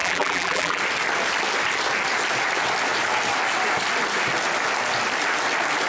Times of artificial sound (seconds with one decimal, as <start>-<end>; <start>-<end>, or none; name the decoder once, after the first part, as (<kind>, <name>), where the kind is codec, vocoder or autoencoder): 0.0-0.8 (vocoder, BigVGAN v2)